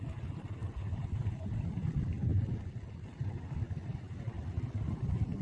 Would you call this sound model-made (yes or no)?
no